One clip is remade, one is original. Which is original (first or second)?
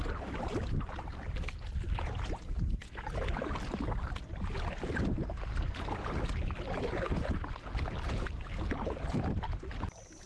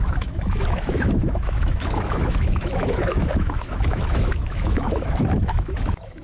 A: first